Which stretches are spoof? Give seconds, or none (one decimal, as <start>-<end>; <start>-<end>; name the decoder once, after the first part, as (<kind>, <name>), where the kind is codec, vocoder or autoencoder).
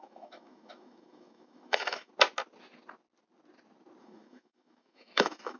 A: 0.0-2.1 (autoencoder, DAC-VAE); 4.0-5.6